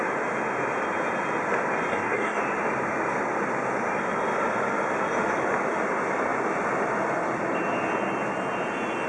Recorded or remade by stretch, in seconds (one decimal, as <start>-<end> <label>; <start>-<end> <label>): 0.0-1.9 recorded; 1.9-2.4 remade; 2.4-9.1 recorded